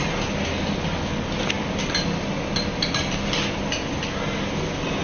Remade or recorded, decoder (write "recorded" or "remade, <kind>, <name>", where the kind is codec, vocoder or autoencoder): recorded